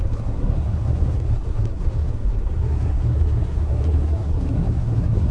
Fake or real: fake